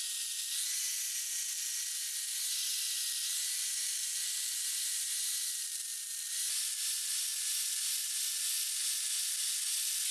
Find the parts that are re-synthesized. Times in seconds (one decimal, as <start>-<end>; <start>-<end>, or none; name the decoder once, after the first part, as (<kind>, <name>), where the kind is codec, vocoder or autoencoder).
none